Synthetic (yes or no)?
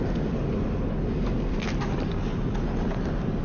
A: no